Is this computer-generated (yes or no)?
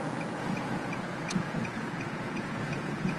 yes